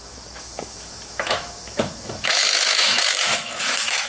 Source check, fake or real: fake